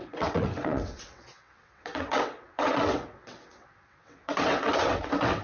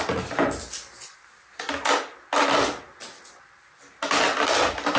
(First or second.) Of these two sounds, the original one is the second